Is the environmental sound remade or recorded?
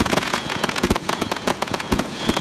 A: remade